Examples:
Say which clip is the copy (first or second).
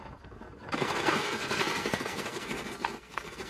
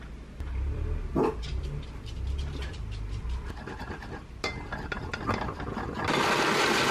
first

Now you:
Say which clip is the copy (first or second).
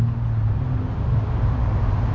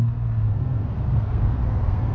second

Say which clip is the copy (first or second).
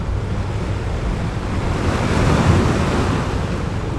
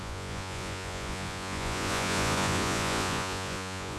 second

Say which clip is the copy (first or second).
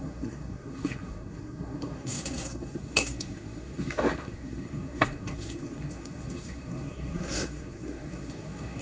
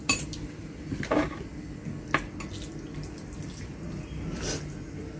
first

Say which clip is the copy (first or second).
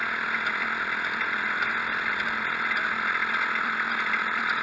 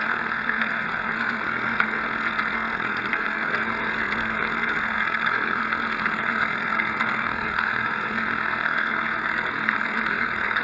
second